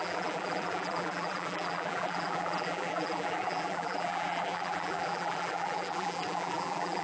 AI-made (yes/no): yes